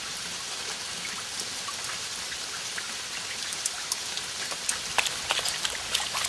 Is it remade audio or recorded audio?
remade